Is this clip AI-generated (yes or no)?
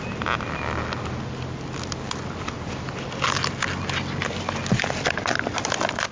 no